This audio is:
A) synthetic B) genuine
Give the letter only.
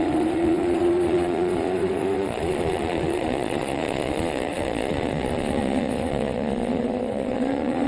A